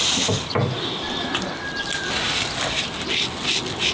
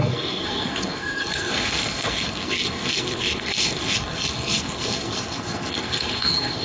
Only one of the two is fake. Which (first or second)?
second